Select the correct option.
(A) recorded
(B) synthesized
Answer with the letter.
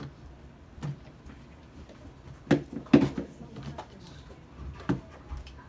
A